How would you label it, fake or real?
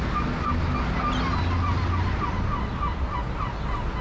real